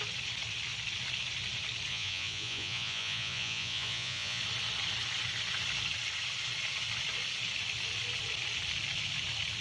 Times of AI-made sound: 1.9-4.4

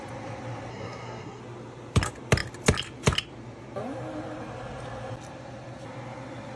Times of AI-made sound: 0.7-1.4